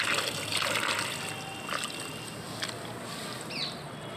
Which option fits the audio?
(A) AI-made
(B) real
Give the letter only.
B